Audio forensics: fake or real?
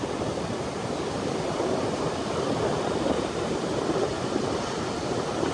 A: fake